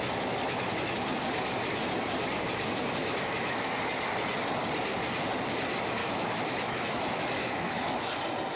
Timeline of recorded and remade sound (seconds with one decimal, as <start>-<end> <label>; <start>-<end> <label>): 0.0-3.0 recorded; 3.0-3.7 remade; 3.7-6.0 recorded; 6.0-8.1 remade; 8.1-8.6 recorded